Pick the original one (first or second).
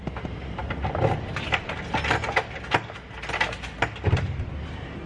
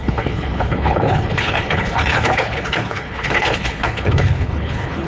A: first